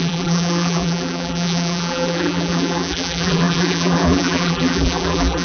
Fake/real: fake